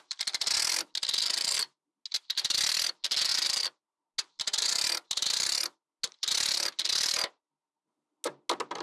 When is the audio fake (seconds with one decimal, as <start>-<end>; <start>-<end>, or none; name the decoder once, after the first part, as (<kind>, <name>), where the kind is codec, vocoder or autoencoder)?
none